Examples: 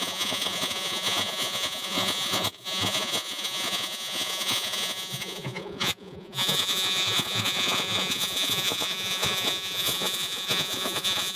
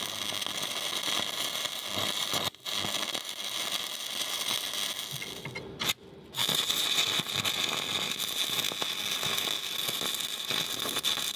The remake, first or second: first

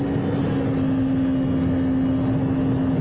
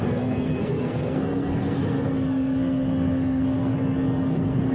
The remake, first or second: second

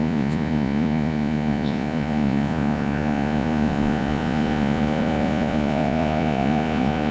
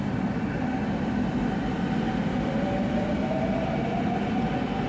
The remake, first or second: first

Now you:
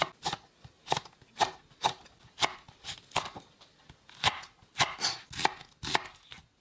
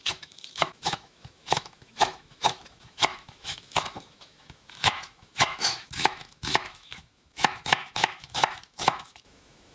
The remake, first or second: second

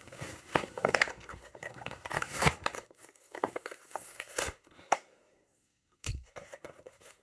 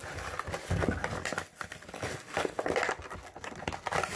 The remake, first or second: first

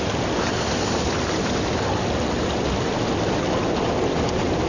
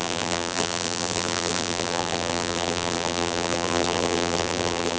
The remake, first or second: second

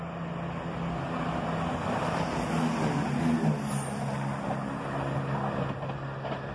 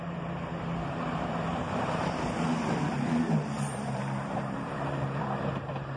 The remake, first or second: second